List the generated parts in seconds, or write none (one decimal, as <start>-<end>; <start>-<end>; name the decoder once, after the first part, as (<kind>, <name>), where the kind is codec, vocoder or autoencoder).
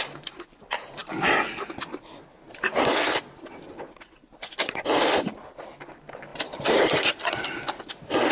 6.3-6.9 (vocoder, BigVGAN v2)